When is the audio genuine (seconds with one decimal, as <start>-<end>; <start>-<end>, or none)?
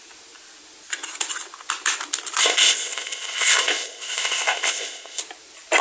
0.0-2.4; 5.2-5.8